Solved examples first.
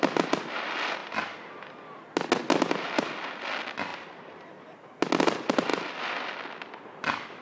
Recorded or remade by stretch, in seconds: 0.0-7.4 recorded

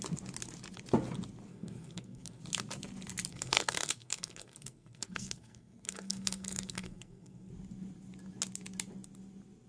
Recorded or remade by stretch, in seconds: 0.0-1.5 recorded; 1.5-2.4 remade; 2.4-3.3 recorded; 3.3-7.5 remade; 7.5-9.7 recorded

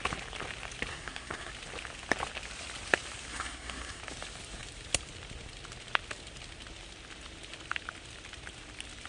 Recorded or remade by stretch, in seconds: 0.0-0.9 recorded; 0.9-1.5 remade; 1.5-3.3 recorded; 3.3-4.0 remade; 4.0-9.1 recorded

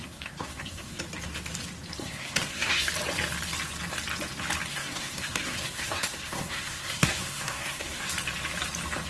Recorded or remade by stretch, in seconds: 0.0-1.0 remade; 1.0-2.0 recorded; 2.0-2.9 remade; 2.9-4.7 recorded; 4.7-8.1 remade; 8.1-9.1 recorded

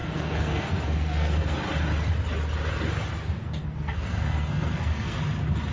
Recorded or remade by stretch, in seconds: 0.0-1.6 remade; 1.6-3.4 recorded; 3.4-5.2 remade; 5.2-5.7 recorded

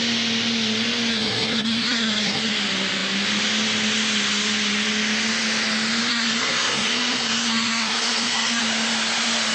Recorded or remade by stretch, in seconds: 0.0-1.1 recorded; 1.1-2.5 remade; 2.5-6.1 recorded; 6.1-8.6 remade; 8.6-9.5 recorded